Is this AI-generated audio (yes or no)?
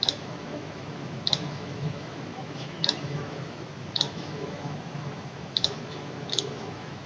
yes